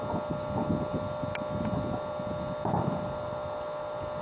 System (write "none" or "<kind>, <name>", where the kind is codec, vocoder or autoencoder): none